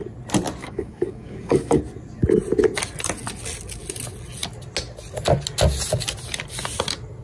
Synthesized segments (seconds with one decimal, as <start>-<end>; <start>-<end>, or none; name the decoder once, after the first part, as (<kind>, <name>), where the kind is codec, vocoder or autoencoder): 0.6-1.8 (codec, DAC)